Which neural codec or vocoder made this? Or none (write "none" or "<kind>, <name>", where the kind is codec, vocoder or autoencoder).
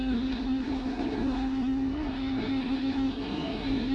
codec, SNAC